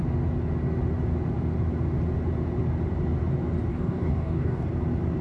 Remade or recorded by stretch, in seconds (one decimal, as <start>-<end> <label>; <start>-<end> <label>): 0.0-3.7 recorded; 3.7-4.7 remade; 4.7-5.2 recorded